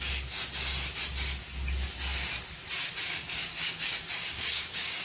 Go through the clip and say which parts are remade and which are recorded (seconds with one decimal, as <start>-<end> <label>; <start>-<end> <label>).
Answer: 0.0-3.4 recorded; 3.4-5.0 remade

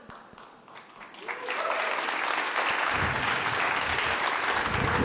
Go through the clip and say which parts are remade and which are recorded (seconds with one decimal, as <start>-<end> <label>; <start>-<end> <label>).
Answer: 0.0-5.0 recorded

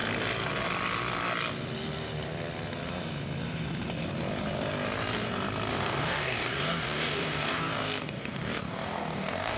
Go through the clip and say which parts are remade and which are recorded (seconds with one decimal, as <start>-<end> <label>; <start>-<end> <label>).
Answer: 0.0-5.7 recorded; 5.7-9.6 remade

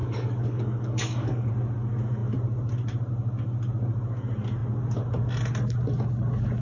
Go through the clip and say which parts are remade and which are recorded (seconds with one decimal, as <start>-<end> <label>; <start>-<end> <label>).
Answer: 0.0-1.5 remade; 1.5-6.6 recorded